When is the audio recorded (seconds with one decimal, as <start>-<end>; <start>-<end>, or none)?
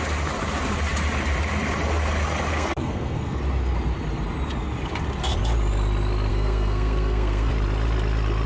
0.0-2.5; 3.4-6.3; 7.5-8.5